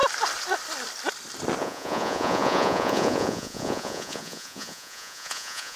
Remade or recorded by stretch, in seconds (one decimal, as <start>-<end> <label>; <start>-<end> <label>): 0.0-1.6 recorded; 1.6-5.8 remade